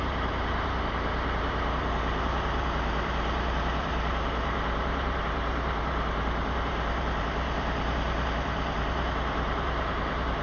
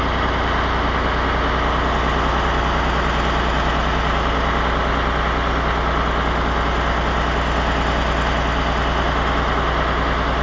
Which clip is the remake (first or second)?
first